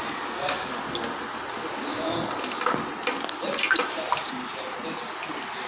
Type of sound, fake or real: real